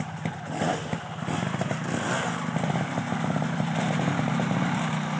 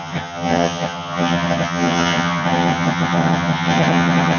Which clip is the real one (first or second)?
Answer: first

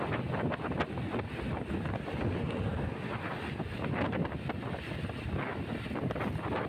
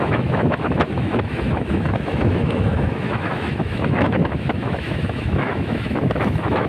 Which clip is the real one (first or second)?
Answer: first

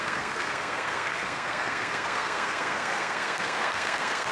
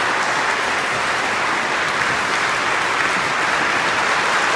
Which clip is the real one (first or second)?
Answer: second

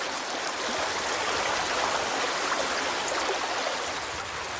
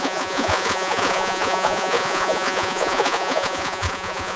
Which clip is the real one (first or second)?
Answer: first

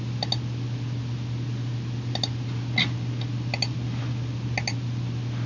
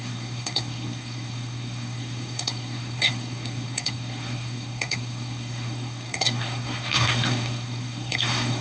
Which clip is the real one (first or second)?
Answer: first